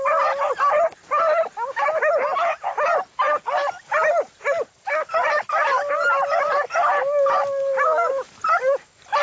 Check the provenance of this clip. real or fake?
real